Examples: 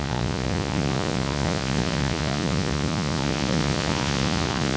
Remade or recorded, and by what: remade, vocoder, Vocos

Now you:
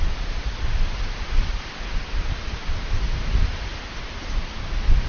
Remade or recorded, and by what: recorded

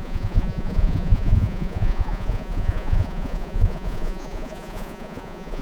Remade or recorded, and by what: remade, vocoder, Vocos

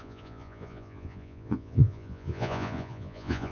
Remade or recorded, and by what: remade, vocoder, Vocos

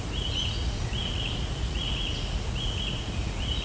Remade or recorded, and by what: remade, vocoder, Vocos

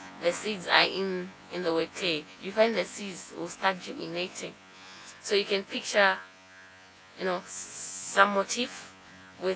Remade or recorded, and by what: remade, vocoder, Vocos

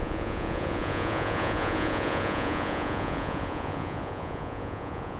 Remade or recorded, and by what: remade, vocoder, Vocos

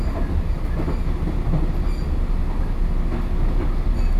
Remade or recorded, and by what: recorded